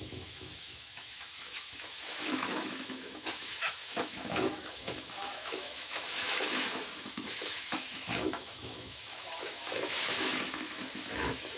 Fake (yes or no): yes